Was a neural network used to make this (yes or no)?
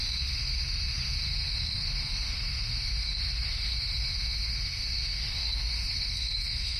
yes